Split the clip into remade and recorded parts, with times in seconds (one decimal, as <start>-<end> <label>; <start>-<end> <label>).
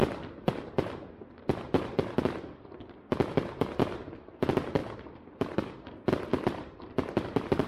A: 0.0-4.8 recorded; 4.8-5.7 remade; 5.7-6.3 recorded; 6.3-7.7 remade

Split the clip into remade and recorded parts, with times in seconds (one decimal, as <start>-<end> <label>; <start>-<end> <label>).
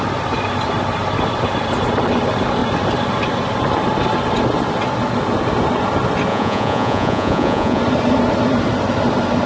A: 0.0-6.3 recorded; 6.3-7.8 remade; 7.8-9.5 recorded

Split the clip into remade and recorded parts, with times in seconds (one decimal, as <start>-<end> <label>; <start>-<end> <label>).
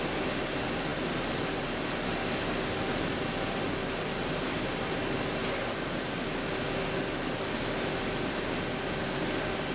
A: 0.0-9.7 recorded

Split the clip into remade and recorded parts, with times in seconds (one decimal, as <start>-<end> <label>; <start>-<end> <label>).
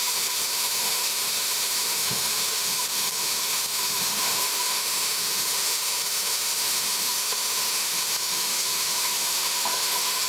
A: 0.0-10.3 remade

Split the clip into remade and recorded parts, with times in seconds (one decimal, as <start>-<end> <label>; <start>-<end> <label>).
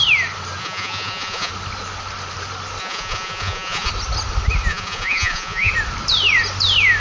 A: 0.0-0.6 recorded; 0.6-1.5 remade; 1.5-2.8 recorded; 2.8-3.9 remade; 3.9-4.7 recorded; 4.7-5.7 remade; 5.7-7.0 recorded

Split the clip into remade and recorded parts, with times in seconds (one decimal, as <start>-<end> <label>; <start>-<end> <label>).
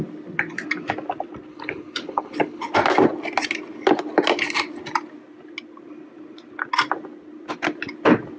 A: 0.0-1.5 recorded; 1.5-2.7 remade; 2.7-8.4 recorded